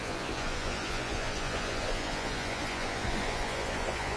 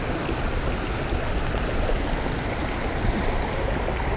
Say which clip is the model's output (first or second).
first